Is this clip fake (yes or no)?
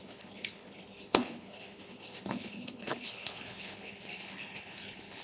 yes